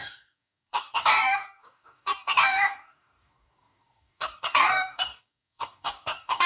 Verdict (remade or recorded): remade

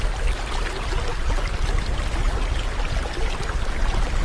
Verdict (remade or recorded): recorded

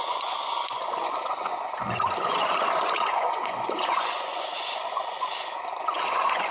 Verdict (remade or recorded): remade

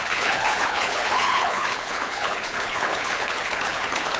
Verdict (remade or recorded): remade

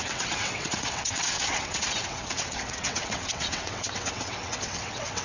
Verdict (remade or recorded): remade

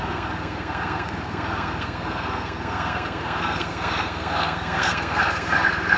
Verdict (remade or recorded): remade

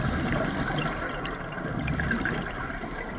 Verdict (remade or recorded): recorded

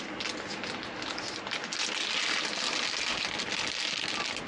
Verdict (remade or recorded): recorded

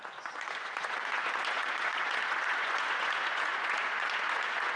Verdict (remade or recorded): remade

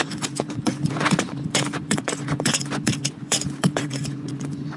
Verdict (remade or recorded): remade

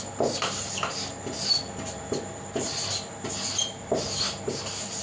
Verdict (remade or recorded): recorded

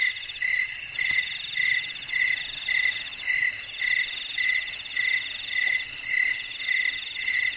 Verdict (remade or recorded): recorded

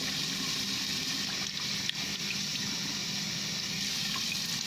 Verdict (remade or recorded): recorded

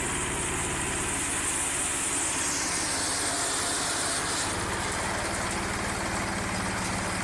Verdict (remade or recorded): recorded